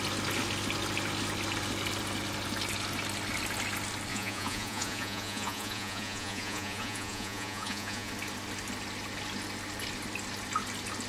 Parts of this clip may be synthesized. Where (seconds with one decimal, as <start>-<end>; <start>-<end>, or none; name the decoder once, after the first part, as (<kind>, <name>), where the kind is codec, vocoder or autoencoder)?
4.1-8.1 (vocoder, Vocos)